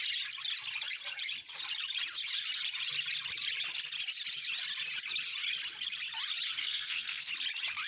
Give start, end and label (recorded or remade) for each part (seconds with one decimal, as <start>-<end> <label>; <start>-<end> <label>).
0.0-6.6 recorded; 6.6-7.3 remade; 7.3-7.9 recorded